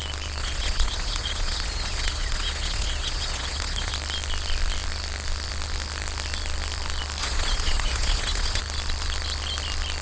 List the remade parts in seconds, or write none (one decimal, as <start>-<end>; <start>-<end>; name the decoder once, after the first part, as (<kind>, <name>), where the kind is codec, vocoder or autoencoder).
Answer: 0.4-3.9 (vocoder, Vocos); 7.2-8.6